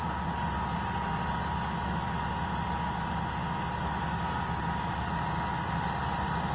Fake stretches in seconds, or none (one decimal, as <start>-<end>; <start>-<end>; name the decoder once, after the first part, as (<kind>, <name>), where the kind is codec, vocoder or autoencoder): none